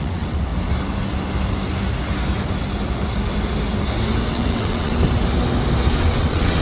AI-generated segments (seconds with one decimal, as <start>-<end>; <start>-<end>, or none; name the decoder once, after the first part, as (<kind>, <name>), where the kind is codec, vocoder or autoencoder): 0.0-0.5 (vocoder, WaveNeXt); 4.3-4.9; 6.0-6.6